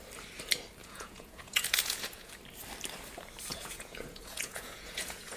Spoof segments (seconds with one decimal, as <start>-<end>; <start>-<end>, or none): 0.8-2.3; 3.5-5.4